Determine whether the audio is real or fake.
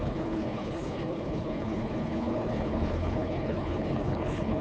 fake